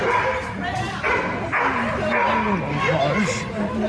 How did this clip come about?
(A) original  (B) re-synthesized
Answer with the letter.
A